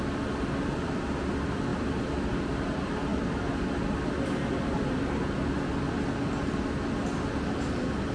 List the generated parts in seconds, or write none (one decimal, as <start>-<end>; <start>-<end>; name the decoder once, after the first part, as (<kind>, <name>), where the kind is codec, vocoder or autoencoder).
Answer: none